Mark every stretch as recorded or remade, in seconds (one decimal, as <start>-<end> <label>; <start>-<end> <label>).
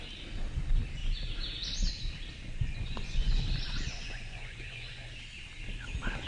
0.0-2.4 recorded; 2.4-5.1 remade; 5.1-6.3 recorded